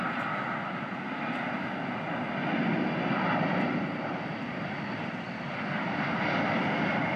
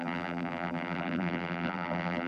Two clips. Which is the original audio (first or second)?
first